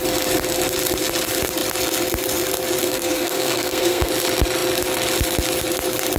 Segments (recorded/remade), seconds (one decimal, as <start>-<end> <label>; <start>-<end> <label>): 0.0-2.8 recorded; 2.8-4.1 remade; 4.1-6.2 recorded

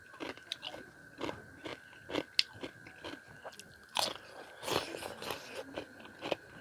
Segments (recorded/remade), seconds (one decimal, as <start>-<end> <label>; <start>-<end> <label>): 0.0-6.6 recorded